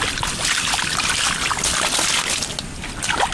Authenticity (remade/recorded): recorded